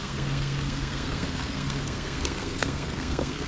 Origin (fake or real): fake